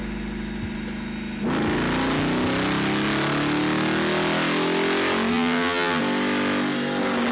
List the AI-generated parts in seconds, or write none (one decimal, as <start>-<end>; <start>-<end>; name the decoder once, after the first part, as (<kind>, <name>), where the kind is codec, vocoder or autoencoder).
5.3-6.0 (vocoder, BigVGAN v2)